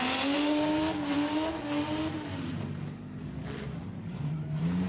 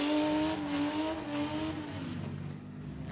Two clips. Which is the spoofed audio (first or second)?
first